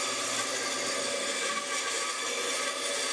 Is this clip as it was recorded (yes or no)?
yes